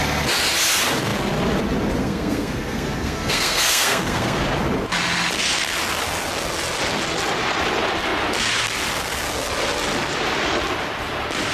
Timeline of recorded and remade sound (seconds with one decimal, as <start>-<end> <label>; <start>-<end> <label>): 0.0-2.0 recorded; 2.0-4.4 remade; 4.4-11.5 recorded